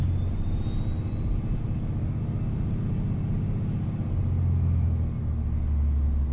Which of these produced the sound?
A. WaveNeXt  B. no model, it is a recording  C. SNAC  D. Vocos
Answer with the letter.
B